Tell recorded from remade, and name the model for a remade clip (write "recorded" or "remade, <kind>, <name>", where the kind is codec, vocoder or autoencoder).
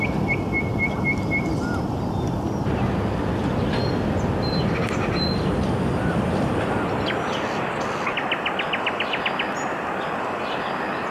recorded